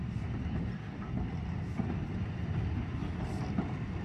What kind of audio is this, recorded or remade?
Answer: recorded